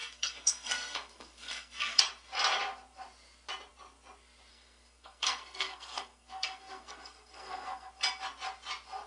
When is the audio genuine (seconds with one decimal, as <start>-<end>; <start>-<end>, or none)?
2.0-4.5; 7.9-9.1